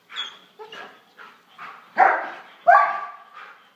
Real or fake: fake